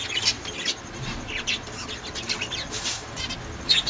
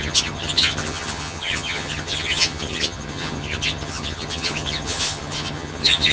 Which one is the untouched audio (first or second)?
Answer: first